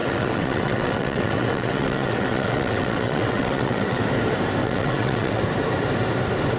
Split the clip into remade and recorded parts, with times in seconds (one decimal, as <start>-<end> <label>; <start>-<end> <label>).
0.0-4.0 remade; 4.0-4.6 recorded; 4.6-5.4 remade; 5.4-6.6 recorded